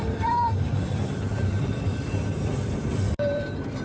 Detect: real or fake fake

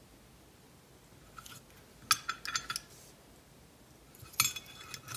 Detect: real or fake real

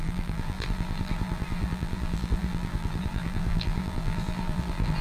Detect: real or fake fake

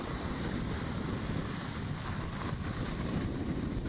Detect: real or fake fake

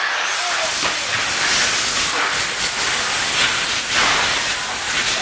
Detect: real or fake real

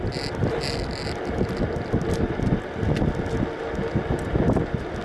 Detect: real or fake real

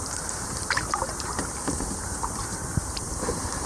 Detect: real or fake fake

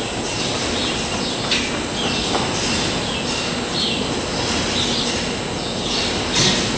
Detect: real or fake real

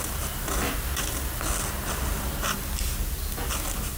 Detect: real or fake real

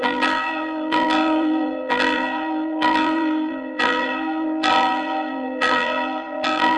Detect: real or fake fake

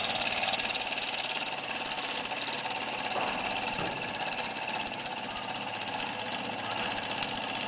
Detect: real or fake real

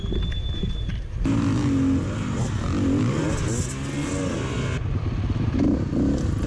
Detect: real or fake real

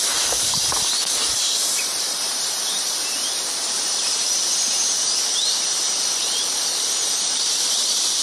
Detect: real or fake fake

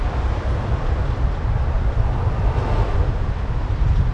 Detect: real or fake fake